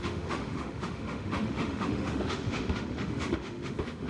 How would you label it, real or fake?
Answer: fake